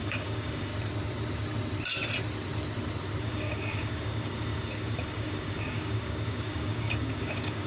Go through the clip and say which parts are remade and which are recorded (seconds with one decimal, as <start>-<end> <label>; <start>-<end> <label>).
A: 0.0-0.7 remade; 0.7-3.2 recorded; 3.2-7.7 remade